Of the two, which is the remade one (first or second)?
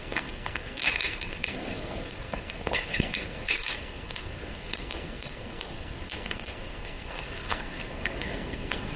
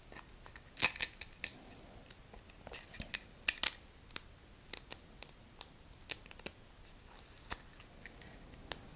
first